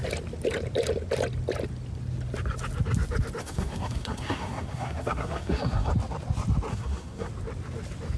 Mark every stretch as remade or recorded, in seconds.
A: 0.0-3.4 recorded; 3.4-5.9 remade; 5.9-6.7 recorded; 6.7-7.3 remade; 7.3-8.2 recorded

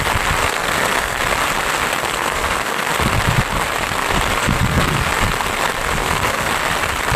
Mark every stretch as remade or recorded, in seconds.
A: 0.0-0.4 recorded; 0.4-1.2 remade; 1.2-2.0 recorded; 2.0-2.9 remade; 2.9-4.4 recorded; 4.4-5.1 remade; 5.1-6.0 recorded; 6.0-6.5 remade; 6.5-7.2 recorded

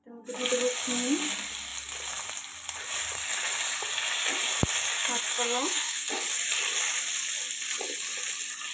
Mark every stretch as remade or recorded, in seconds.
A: 0.0-5.3 recorded; 5.3-6.1 remade; 6.1-8.7 recorded

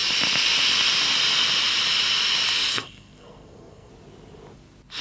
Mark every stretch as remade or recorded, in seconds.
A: 0.0-2.7 recorded; 2.7-3.9 remade; 3.9-5.0 recorded